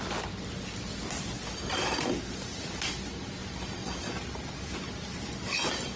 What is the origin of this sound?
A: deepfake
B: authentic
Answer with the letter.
B